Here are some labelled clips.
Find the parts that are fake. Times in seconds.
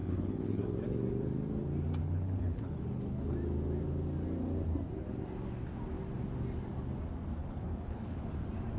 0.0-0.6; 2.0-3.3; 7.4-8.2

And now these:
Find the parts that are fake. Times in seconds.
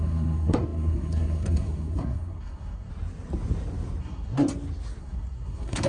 0.0-2.9; 4.0-4.5; 5.0-5.9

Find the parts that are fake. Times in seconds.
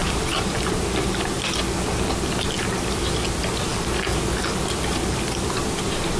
0.0-1.3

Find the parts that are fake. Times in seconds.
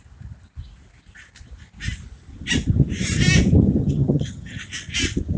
3.8-4.6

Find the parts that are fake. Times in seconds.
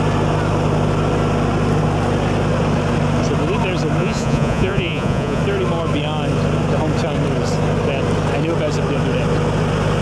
4.0-5.4